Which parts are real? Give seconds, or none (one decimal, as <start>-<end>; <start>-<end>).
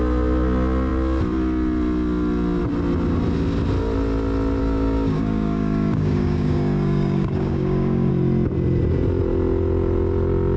0.0-4.6; 8.1-10.6